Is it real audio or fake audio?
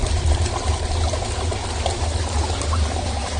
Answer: fake